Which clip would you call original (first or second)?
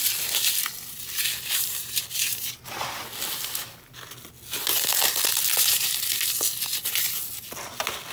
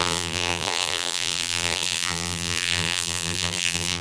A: first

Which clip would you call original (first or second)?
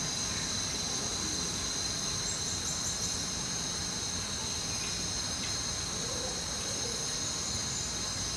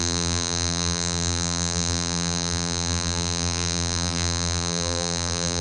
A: first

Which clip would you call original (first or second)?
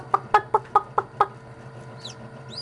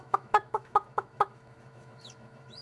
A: first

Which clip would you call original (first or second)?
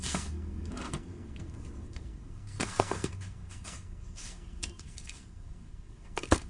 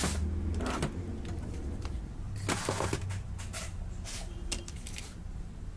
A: second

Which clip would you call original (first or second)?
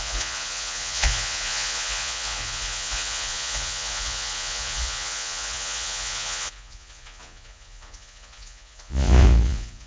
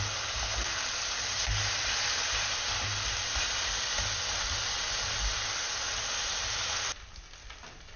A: second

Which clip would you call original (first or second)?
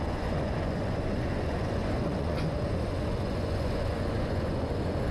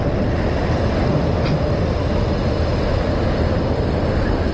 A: second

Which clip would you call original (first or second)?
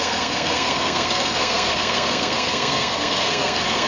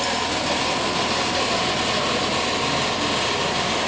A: second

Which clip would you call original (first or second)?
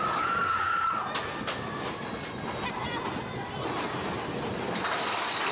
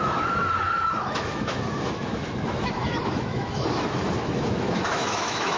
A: first